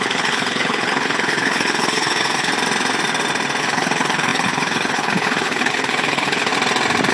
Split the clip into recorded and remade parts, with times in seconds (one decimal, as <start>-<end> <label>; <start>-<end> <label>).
0.0-2.5 remade; 2.5-3.6 recorded; 3.6-6.5 remade; 6.5-7.1 recorded